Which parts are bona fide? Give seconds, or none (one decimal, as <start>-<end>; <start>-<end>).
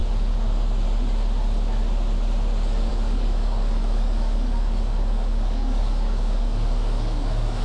0.0-2.9